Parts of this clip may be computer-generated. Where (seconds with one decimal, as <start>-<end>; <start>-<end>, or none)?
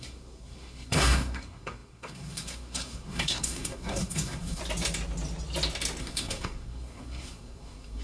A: 0.0-4.6; 6.0-8.0